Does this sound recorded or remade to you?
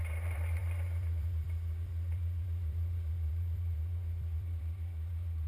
remade